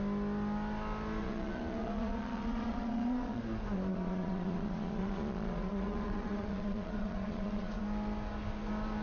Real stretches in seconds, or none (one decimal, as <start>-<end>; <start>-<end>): 0.0-1.2; 3.4-3.9; 7.8-9.0